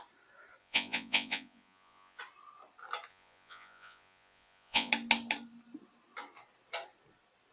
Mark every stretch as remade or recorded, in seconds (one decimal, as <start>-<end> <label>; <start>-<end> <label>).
0.0-0.6 recorded; 0.6-2.2 remade; 2.2-3.1 recorded; 3.1-4.9 remade; 4.9-7.5 recorded